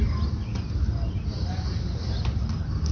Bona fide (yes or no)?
yes